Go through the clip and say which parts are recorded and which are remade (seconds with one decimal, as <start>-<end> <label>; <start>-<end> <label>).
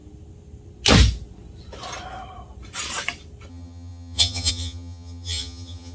0.0-3.5 recorded; 3.5-5.9 remade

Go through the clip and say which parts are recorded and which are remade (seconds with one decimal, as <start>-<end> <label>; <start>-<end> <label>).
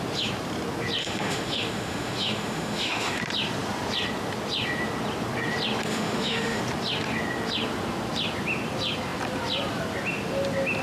0.0-1.0 recorded; 1.0-3.2 remade; 3.2-5.9 recorded; 5.9-6.6 remade; 6.6-10.8 recorded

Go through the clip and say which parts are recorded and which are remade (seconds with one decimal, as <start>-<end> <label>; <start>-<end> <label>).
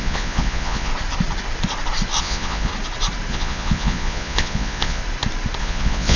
0.0-0.9 remade; 0.9-2.2 recorded; 2.2-2.7 remade; 2.7-3.3 recorded; 3.3-5.0 remade; 5.0-5.6 recorded; 5.6-6.2 remade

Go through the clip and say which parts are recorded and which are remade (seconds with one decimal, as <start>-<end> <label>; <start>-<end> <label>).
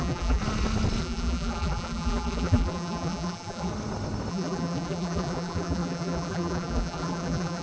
0.0-0.4 remade; 0.4-1.0 recorded; 1.0-3.7 remade; 3.7-4.3 recorded; 4.3-7.6 remade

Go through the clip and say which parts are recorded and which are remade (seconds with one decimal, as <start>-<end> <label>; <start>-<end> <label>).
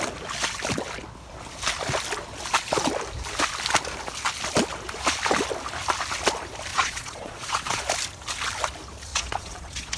0.0-6.7 recorded; 6.7-7.8 remade; 7.8-9.1 recorded; 9.1-10.0 remade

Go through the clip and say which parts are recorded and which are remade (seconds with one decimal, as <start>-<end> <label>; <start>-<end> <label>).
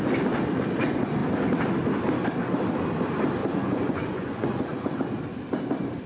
0.0-3.4 recorded; 3.4-5.0 remade; 5.0-6.1 recorded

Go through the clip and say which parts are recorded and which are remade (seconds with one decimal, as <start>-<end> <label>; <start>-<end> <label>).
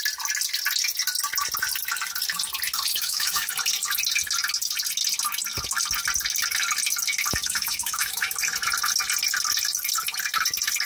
0.0-2.9 recorded; 2.9-3.5 remade; 3.5-7.4 recorded; 7.4-8.3 remade; 8.3-10.9 recorded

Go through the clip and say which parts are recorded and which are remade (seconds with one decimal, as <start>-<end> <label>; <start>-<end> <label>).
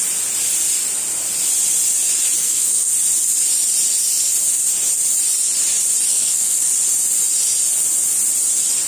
0.0-2.4 recorded; 2.4-2.9 remade; 2.9-6.1 recorded; 6.1-6.7 remade; 6.7-8.9 recorded